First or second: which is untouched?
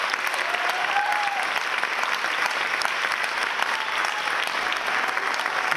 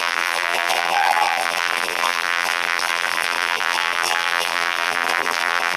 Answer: first